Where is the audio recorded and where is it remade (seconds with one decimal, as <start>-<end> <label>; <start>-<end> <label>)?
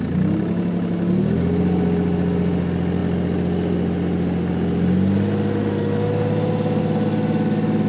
0.0-7.9 recorded